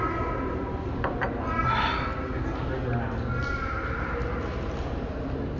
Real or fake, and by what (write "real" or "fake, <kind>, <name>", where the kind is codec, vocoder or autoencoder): real